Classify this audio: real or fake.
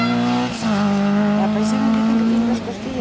real